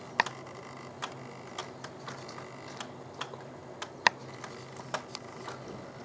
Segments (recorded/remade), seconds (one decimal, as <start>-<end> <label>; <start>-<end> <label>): 0.0-6.0 recorded